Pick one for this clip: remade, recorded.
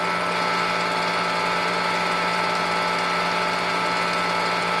recorded